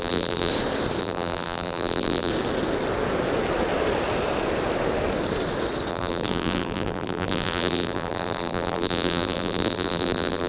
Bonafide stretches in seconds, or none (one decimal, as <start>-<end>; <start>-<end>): 0.5-1.0; 2.3-5.9